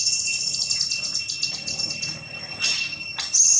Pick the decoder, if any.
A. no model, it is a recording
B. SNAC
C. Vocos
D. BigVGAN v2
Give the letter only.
A